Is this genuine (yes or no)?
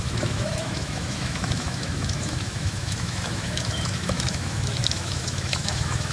no